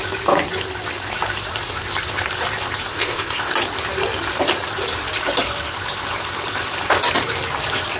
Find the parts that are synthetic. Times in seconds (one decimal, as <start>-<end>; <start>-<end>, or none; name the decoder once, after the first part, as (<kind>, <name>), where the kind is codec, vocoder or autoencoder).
2.9-3.5 (codec, ZipCodec)